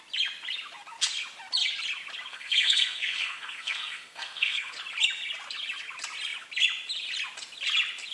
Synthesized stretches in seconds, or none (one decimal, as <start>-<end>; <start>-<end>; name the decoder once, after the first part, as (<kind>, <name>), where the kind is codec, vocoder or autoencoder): 2.3-4.7 (codec, SNAC)